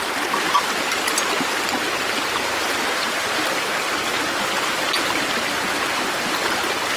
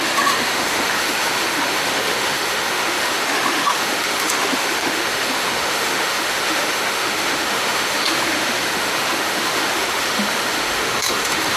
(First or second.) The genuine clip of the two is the first